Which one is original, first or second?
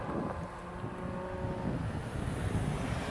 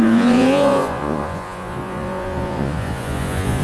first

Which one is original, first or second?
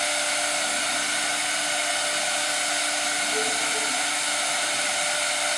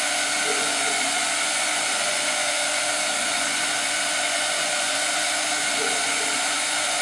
first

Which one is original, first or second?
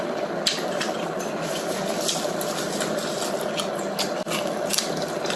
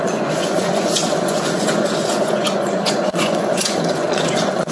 first